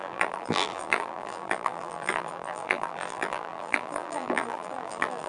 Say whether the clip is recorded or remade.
remade